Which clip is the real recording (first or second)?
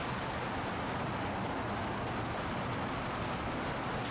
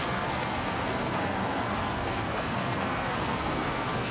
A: first